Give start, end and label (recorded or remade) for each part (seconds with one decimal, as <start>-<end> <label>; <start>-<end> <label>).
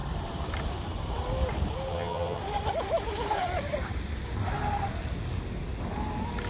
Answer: 0.0-1.9 recorded; 1.9-2.4 remade; 2.4-6.5 recorded